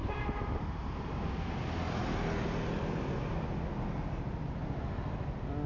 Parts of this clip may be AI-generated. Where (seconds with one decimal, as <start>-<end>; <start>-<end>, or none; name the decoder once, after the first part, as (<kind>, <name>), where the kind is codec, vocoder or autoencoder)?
0.0-1.2 (vocoder, BigVGAN v2)